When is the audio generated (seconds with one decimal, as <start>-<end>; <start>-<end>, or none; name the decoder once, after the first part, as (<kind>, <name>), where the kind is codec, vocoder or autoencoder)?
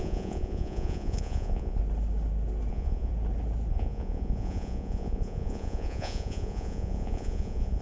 0.0-1.8 (vocoder, Vocos); 2.7-3.1; 3.7-7.8